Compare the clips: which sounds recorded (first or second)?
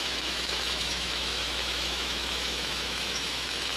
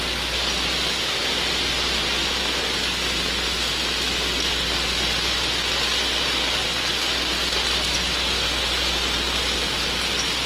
second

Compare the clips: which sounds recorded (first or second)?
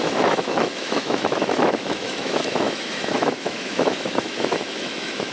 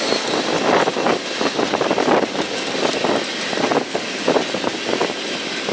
second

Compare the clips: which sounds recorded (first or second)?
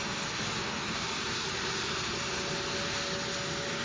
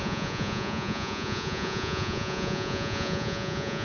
first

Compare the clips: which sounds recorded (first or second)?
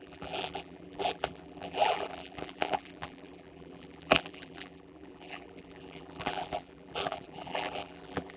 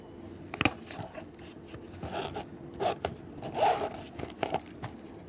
second